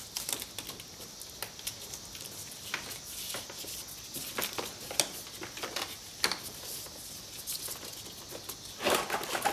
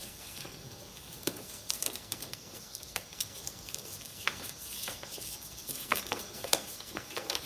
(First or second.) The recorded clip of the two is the first